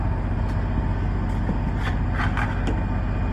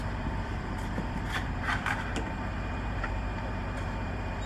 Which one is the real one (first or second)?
first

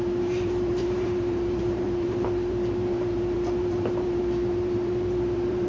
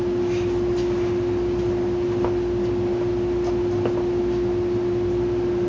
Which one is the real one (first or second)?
second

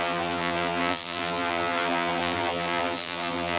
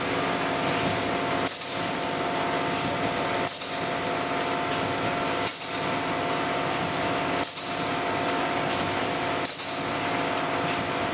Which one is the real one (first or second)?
second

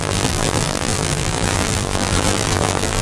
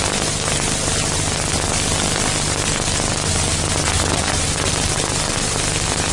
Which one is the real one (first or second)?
second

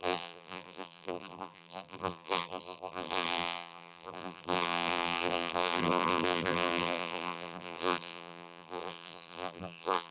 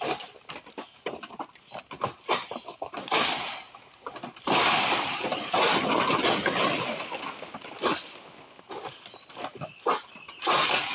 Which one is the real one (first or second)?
second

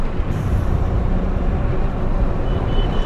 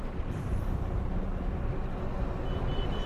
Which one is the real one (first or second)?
second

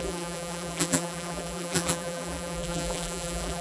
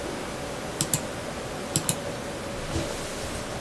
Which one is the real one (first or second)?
second